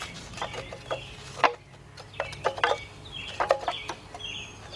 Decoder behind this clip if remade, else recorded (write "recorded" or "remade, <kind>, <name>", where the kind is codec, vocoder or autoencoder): recorded